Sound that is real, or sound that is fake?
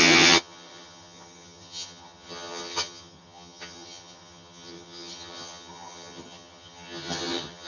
fake